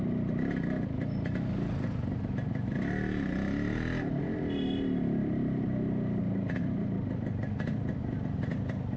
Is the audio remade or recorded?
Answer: recorded